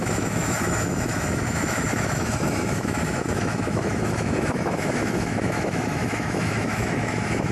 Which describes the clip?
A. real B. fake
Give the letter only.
B